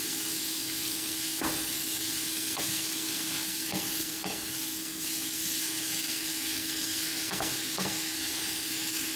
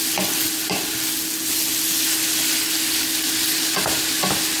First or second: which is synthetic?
first